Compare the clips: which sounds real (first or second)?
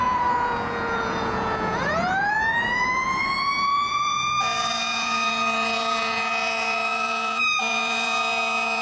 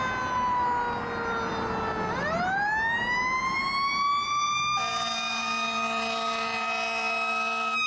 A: second